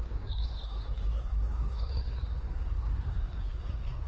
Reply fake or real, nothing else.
fake